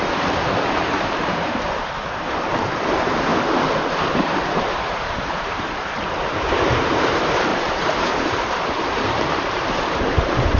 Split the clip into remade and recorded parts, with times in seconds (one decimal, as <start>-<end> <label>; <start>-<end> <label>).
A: 0.0-3.3 remade; 3.3-4.1 recorded; 4.1-10.6 remade